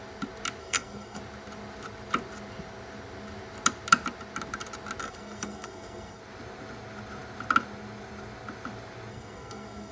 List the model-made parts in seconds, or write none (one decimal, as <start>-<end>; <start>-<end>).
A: 0.6-1.2; 5.0-6.2; 9.1-9.9